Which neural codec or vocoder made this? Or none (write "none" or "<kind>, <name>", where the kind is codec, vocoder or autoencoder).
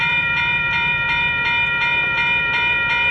vocoder, BigVGAN v2